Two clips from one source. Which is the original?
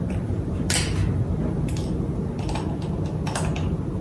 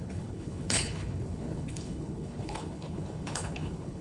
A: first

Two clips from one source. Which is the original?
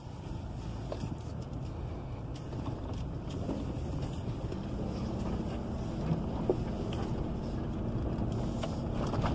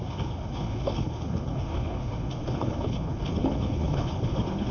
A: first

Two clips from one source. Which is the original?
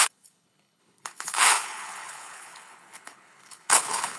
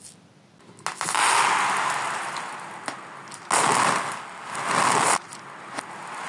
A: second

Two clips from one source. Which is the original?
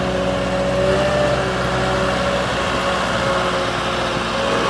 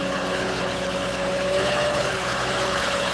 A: first